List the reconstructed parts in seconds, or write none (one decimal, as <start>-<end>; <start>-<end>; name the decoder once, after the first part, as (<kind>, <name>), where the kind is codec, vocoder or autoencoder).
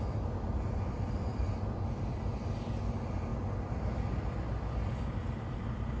none